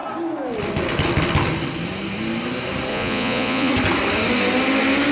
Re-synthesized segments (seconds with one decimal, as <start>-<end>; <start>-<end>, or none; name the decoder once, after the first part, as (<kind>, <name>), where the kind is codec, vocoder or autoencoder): 2.9-3.7 (vocoder, Vocos)